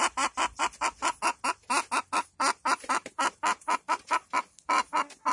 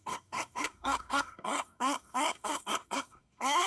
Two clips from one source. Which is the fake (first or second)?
second